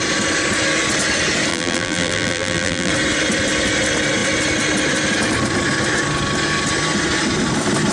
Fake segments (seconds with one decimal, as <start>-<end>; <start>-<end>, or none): 1.5-2.9